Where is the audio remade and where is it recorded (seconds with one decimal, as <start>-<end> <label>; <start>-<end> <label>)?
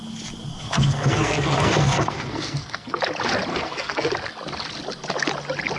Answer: 0.0-0.5 recorded; 0.5-3.0 remade; 3.0-3.5 recorded; 3.5-4.1 remade; 4.1-5.8 recorded